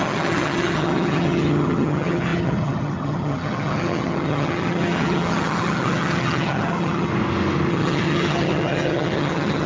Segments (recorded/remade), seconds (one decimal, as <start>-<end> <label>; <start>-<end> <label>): 0.0-7.1 remade; 7.1-7.7 recorded; 7.7-9.7 remade